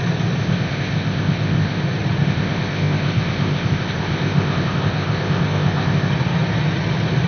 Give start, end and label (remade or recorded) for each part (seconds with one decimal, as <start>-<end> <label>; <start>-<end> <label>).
0.0-0.4 recorded; 0.4-1.8 remade; 1.8-2.2 recorded; 2.2-6.1 remade; 6.1-7.3 recorded